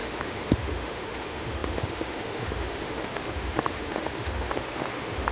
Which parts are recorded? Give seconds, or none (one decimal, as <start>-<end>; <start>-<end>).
none